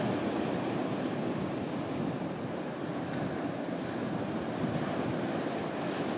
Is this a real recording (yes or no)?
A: yes